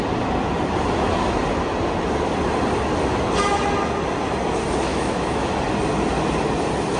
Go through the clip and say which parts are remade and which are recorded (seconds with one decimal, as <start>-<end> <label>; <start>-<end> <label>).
0.0-4.9 recorded; 4.9-5.5 remade; 5.5-7.0 recorded